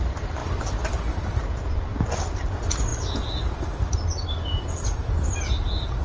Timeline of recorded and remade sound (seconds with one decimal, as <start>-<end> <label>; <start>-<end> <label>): 0.0-6.0 recorded